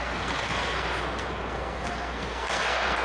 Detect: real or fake fake